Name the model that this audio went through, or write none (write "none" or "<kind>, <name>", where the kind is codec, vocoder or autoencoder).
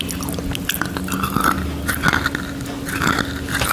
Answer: none